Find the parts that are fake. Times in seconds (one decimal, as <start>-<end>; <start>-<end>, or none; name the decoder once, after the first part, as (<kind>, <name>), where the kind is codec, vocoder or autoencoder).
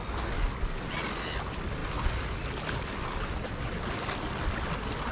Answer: none